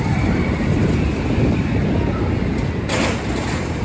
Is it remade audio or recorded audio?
recorded